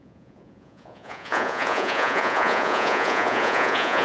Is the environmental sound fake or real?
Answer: fake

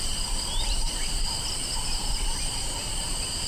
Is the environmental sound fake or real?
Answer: real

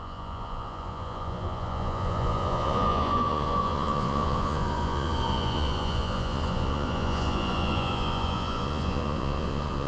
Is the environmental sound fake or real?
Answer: fake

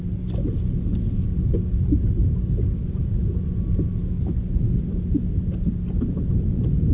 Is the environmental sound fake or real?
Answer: real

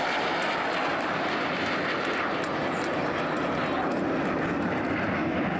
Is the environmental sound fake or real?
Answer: real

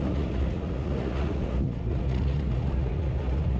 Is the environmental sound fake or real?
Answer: fake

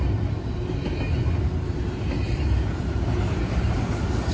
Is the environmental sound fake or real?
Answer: real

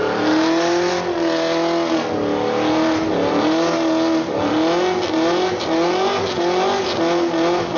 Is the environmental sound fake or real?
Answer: real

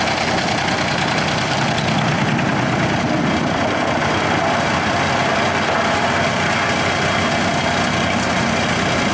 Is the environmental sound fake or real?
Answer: real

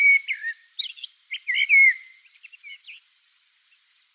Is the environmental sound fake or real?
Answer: real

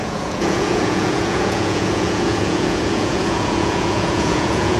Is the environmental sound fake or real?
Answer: fake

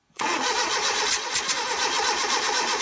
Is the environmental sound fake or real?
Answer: fake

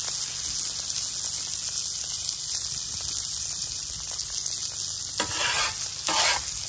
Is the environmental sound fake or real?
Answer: real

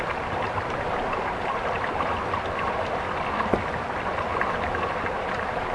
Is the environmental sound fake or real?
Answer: real